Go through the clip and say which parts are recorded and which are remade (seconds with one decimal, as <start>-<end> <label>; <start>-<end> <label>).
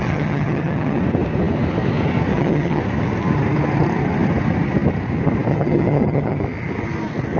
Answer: 0.0-1.0 remade; 1.0-2.3 recorded; 2.3-2.8 remade; 2.8-5.5 recorded; 5.5-6.4 remade; 6.4-7.4 recorded